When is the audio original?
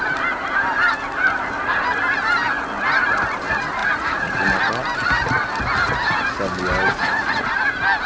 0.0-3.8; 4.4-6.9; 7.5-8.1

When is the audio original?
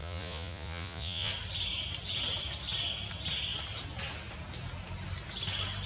1.3-5.9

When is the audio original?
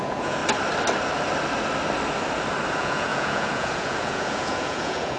0.4-2.7